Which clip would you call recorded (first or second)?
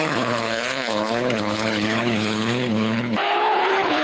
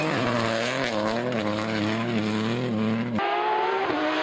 second